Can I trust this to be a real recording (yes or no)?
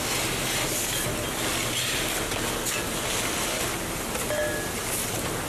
yes